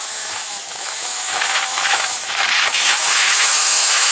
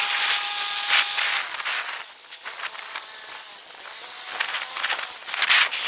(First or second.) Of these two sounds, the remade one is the first